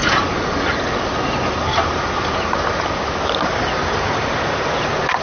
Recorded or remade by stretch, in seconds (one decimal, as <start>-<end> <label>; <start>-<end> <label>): 0.0-5.2 recorded